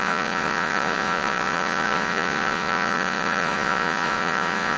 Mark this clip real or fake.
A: fake